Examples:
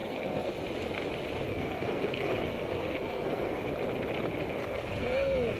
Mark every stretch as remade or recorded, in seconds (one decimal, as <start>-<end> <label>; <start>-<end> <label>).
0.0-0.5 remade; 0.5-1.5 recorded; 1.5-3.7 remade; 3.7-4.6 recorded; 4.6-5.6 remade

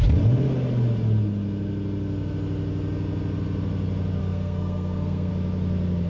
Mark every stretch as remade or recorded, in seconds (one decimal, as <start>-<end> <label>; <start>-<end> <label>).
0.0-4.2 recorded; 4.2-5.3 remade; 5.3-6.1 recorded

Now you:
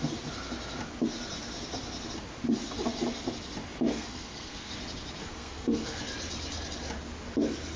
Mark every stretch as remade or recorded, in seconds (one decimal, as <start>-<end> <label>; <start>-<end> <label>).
0.0-3.9 recorded; 3.9-4.7 remade; 4.7-5.2 recorded; 5.2-6.0 remade; 6.0-7.8 recorded

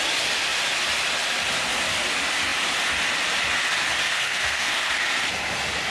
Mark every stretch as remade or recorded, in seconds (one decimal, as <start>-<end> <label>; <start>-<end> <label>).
0.0-4.1 recorded; 4.1-4.9 remade; 4.9-5.9 recorded